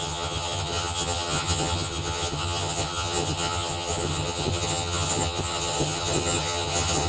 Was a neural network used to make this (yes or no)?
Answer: yes